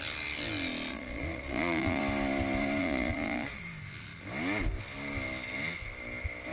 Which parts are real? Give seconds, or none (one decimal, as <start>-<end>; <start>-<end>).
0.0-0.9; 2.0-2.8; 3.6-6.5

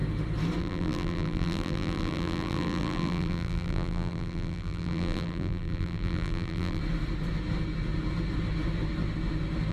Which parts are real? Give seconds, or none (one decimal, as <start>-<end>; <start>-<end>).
0.0-0.6; 6.8-9.7

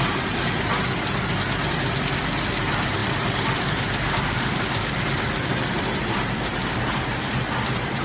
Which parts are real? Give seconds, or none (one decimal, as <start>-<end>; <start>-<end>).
0.0-3.0; 7.0-8.0

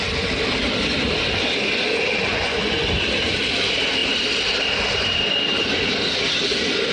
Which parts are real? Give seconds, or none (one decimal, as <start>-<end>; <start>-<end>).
0.0-2.3; 2.9-6.9